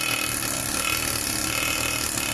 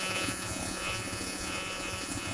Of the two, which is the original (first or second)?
first